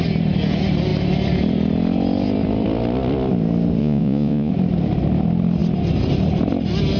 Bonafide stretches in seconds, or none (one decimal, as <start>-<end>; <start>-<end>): 0.0-3.8; 4.5-7.0